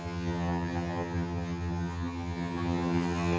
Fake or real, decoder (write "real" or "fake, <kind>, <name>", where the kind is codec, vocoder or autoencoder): fake, vocoder, HiFi-GAN